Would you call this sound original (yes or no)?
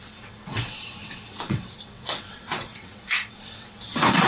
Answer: no